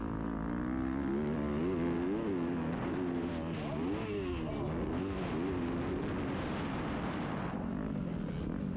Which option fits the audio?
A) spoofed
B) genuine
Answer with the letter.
B